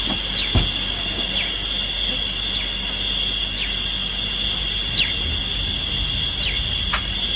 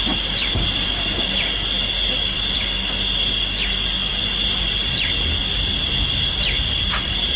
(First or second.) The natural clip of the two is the first